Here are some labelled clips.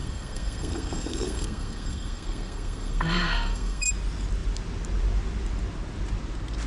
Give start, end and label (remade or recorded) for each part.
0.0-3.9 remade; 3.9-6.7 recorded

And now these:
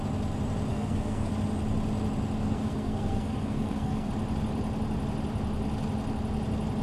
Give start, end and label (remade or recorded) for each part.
0.0-0.7 recorded; 0.7-1.3 remade; 1.3-2.4 recorded; 2.4-4.1 remade; 4.1-6.8 recorded

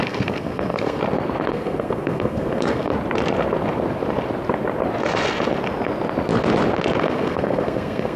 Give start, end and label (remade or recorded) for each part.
0.0-1.0 remade; 1.0-1.5 recorded; 1.5-2.9 remade; 2.9-7.0 recorded; 7.0-8.2 remade

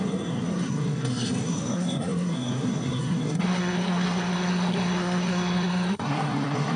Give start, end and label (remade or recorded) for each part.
0.0-6.8 remade

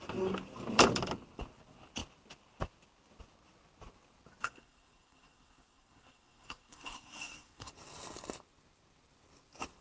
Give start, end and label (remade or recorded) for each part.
0.0-4.4 recorded; 4.4-7.7 remade; 7.7-9.8 recorded

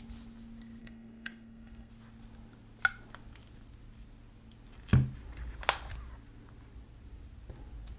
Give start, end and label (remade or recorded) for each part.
0.0-0.8 recorded; 0.8-1.9 remade; 1.9-8.0 recorded